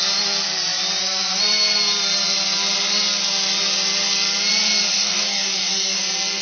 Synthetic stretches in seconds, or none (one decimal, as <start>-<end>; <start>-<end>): 4.9-6.0